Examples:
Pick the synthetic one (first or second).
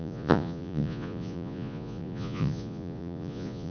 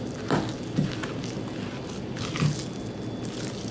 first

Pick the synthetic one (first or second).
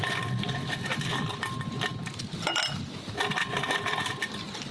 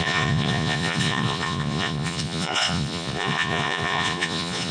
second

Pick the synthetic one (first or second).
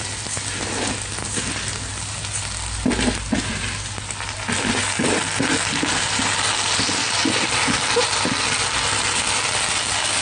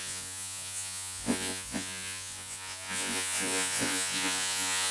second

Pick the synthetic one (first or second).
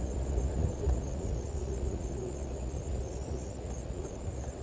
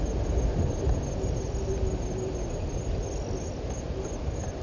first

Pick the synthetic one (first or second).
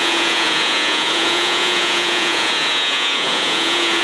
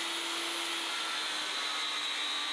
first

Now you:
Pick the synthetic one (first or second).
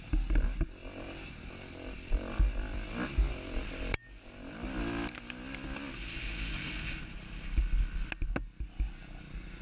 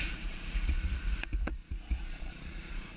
second